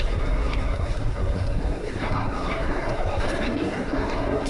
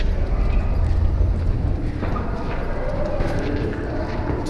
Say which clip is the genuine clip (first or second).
second